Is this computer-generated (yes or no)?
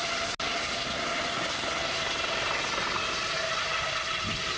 no